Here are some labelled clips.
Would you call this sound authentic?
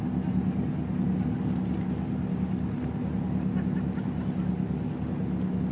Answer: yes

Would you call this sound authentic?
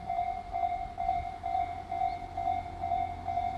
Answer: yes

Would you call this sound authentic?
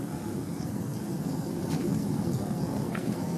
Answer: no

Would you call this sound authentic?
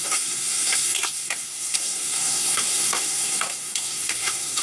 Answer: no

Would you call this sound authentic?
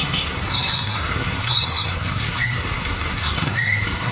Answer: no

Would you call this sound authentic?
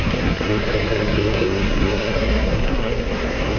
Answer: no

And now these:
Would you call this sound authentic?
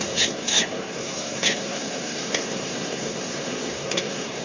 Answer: no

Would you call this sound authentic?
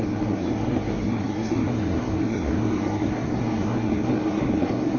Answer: no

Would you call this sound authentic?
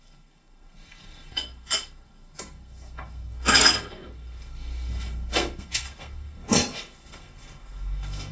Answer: no